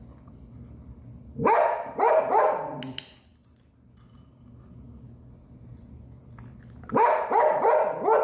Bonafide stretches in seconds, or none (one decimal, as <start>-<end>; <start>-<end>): 0.0-8.2